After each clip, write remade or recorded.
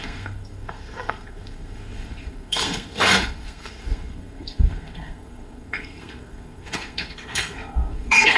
remade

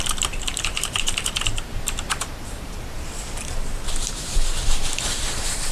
remade